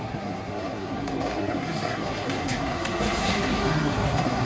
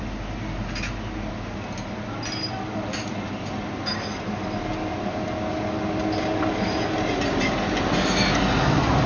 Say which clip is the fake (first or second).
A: first